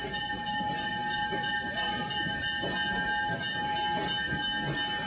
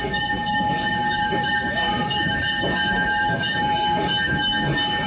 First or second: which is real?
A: first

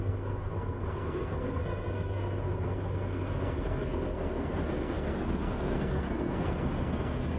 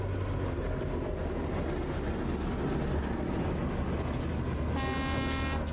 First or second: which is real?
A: second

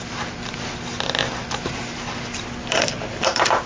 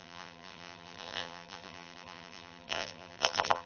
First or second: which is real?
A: first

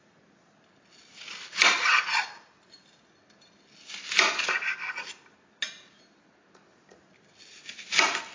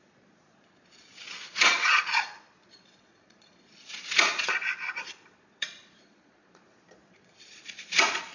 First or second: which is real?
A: first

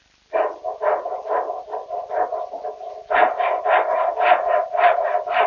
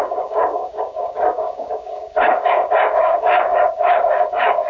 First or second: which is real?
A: first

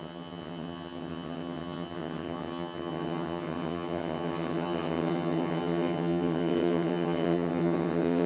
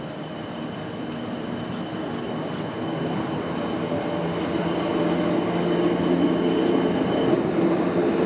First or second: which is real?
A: second